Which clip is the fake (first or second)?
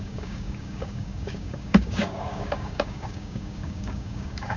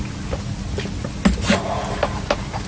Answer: first